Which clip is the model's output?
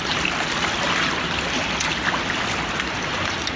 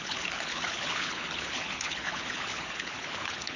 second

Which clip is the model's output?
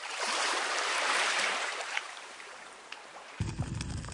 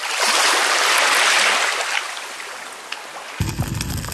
first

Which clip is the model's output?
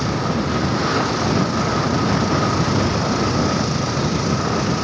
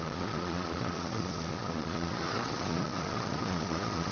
second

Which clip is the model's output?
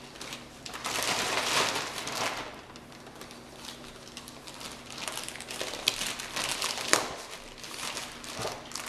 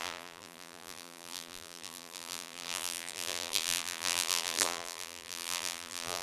second